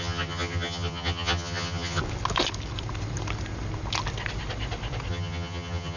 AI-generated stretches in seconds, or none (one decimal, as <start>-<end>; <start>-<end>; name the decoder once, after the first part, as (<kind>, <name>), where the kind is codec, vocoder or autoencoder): 0.0-2.0 (vocoder, HiFi-GAN); 5.1-6.0